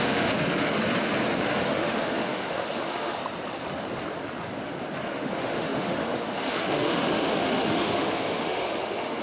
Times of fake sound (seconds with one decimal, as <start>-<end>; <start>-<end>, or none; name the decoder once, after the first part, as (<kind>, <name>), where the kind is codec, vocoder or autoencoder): 0.0-0.8 (autoencoder, DAC-VAE); 1.4-3.2; 5.1-9.2